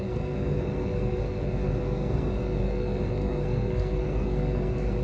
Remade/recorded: remade